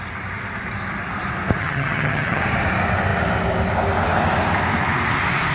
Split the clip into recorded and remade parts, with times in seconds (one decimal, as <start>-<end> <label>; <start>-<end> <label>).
0.0-1.6 recorded; 1.6-2.4 remade; 2.4-5.5 recorded